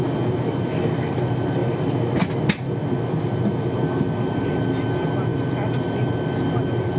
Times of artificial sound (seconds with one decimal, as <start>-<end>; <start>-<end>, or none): none